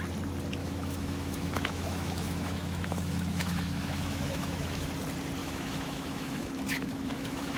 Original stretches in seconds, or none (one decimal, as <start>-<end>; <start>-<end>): 0.0-0.6; 4.9-5.4